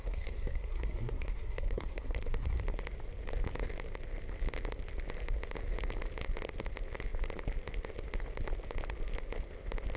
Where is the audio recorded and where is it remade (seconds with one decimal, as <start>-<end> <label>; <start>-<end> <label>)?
0.0-2.6 remade; 2.6-10.0 recorded